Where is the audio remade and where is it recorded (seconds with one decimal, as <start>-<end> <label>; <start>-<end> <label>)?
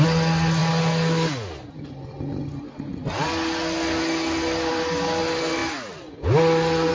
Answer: 0.0-6.9 recorded